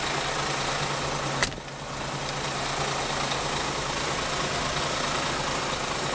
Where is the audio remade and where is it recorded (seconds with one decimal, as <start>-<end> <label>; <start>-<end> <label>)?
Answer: 0.0-6.1 recorded